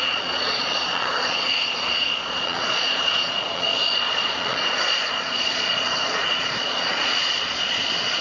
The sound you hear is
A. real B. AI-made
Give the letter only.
B